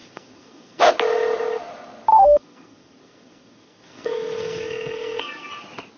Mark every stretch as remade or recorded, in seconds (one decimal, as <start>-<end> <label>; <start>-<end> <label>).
0.0-0.9 remade; 0.9-2.1 recorded; 2.1-5.5 remade; 5.5-6.0 recorded